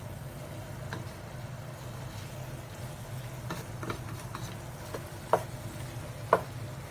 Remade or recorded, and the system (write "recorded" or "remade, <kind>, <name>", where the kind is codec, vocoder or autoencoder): recorded